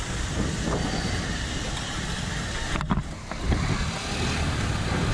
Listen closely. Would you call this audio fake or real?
real